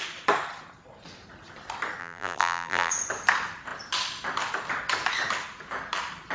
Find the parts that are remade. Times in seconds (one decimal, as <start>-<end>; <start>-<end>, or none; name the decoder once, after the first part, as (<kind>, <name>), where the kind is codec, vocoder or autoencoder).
2.0-2.9 (vocoder, BigVGAN v2)